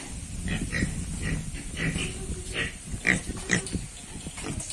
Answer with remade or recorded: recorded